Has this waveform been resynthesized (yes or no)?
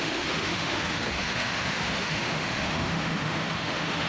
yes